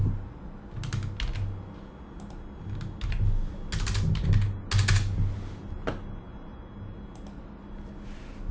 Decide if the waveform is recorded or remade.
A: recorded